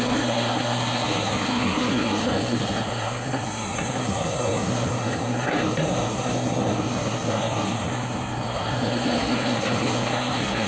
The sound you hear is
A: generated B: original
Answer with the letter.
A